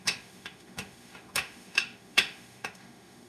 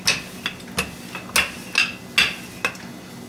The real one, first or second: second